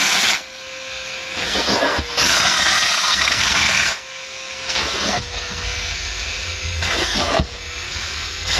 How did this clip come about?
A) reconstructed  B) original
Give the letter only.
A